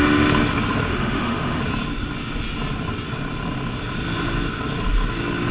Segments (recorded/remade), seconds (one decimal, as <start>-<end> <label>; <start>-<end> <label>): 0.0-0.9 recorded; 0.9-1.6 remade; 1.6-5.5 recorded